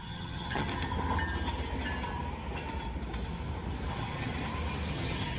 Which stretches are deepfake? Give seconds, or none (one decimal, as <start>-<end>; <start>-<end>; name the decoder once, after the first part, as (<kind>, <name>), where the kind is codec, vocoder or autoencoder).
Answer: 0.0-0.7 (vocoder, HiFi-GAN); 3.9-4.3; 4.9-5.4